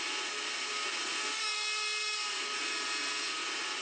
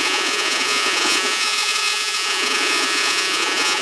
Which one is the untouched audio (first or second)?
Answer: first